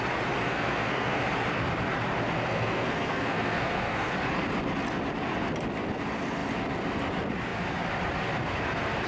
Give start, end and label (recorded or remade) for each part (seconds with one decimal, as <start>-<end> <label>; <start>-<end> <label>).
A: 0.0-0.5 recorded; 0.5-1.2 remade; 1.2-2.5 recorded; 2.5-4.1 remade; 4.1-9.1 recorded